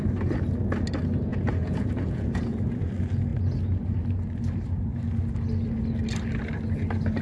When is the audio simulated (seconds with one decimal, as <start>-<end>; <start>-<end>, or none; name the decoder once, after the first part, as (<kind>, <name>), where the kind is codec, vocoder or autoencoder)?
1.3-2.9 (vocoder, Vocos)